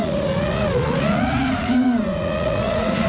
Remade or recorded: remade